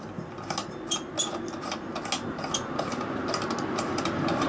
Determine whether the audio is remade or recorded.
recorded